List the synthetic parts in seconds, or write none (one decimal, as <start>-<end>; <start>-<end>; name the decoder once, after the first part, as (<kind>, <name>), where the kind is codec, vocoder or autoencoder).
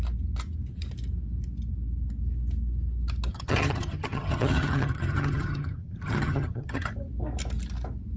3.3-6.9 (vocoder, HiFi-GAN)